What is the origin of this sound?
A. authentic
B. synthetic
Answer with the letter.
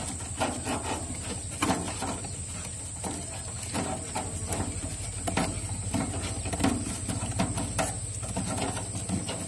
A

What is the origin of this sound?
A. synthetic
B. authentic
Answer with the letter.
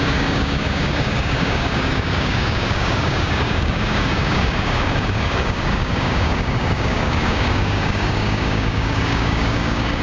A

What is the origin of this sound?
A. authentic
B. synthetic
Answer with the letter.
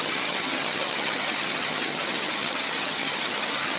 B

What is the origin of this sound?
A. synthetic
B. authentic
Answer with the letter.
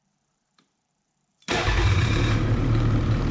A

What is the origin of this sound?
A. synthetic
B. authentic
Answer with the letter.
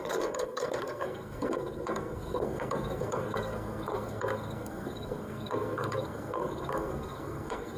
A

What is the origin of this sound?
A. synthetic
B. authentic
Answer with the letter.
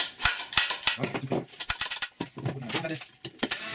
B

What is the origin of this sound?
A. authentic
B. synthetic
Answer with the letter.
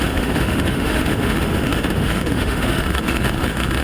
B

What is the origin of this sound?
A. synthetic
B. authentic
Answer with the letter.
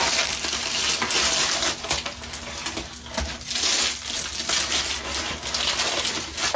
B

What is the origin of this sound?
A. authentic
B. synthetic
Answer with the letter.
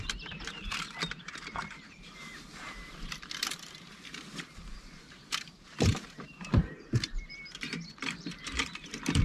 B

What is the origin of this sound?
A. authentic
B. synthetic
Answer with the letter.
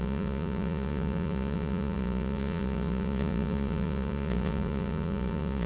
B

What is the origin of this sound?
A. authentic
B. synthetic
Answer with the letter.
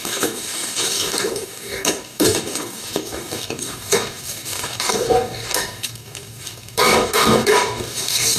B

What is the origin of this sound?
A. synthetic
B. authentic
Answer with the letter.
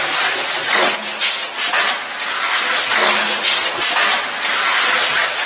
B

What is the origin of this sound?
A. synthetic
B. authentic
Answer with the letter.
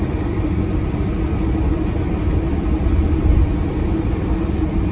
B